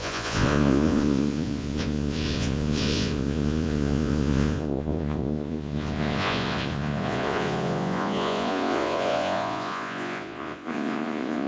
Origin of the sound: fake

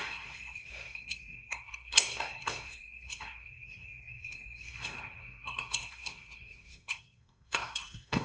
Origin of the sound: fake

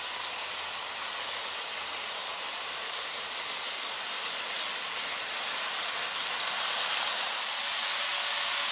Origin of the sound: real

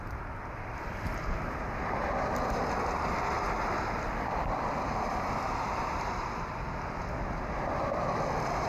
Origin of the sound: fake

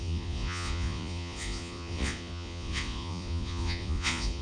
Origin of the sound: fake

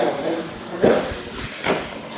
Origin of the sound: real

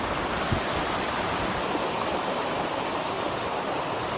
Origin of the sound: real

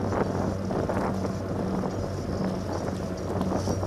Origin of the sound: real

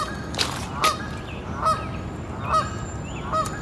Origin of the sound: real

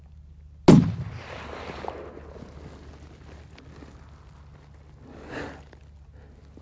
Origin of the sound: real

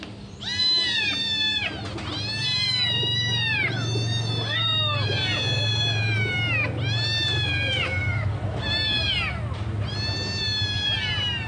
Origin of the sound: real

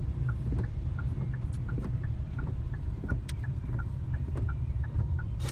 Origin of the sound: fake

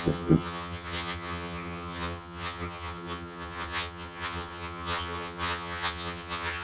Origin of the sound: fake